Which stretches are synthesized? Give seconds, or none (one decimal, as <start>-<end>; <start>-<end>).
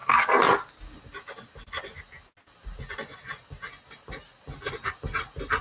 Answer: none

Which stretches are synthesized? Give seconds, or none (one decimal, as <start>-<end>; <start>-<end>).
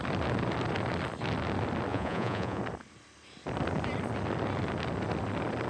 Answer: 1.9-2.6